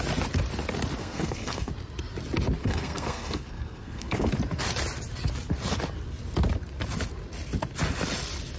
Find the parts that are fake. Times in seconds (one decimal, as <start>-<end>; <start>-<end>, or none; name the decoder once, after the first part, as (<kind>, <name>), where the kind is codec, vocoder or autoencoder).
1.0-1.7 (codec, SNAC); 2.6-4.3

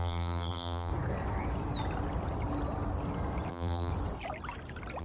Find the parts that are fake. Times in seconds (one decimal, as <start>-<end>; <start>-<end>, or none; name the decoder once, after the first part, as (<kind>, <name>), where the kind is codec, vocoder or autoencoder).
0.0-0.9 (vocoder, BigVGAN v2); 3.5-3.9

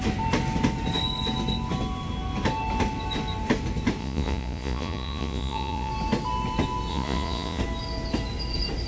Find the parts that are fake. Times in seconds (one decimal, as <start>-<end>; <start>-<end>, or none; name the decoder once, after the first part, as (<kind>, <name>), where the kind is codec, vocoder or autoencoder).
4.0-5.9 (vocoder, Vocos); 6.9-7.6

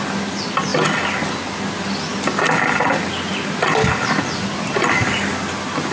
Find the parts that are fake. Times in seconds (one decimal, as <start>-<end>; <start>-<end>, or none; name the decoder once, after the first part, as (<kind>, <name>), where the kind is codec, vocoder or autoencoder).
none